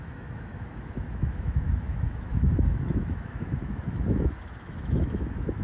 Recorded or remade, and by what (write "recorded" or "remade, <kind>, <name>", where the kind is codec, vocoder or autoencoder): remade, autoencoder, DAC-VAE